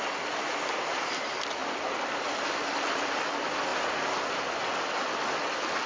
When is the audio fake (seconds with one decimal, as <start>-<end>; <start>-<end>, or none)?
none